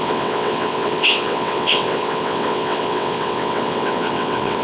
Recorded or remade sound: remade